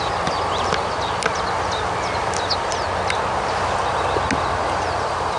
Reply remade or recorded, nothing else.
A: recorded